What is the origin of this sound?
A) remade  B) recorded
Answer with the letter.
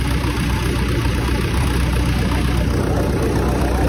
B